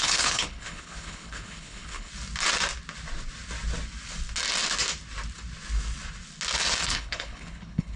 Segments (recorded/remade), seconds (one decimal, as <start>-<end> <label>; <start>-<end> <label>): 0.0-2.1 remade; 2.1-6.9 recorded; 6.9-8.0 remade